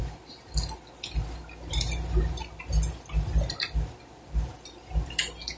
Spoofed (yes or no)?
no